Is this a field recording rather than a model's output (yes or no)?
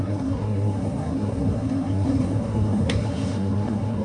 no